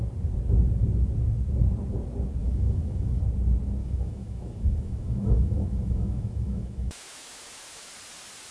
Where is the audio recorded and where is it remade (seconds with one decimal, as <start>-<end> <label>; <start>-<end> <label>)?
0.0-2.4 recorded; 2.4-3.2 remade; 3.2-3.8 recorded; 3.8-7.9 remade; 7.9-8.5 recorded